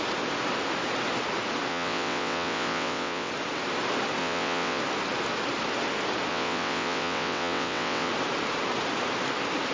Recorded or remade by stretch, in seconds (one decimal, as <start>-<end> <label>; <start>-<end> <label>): 0.0-1.7 recorded; 1.7-3.3 remade; 3.3-4.2 recorded; 4.2-4.8 remade; 4.8-6.3 recorded; 6.3-8.1 remade; 8.1-9.7 recorded